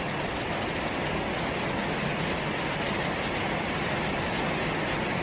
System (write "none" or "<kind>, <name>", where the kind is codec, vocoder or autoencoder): none